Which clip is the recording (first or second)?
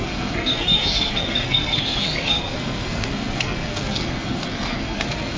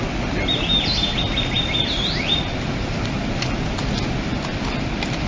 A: second